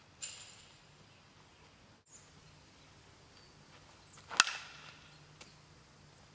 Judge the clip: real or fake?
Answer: real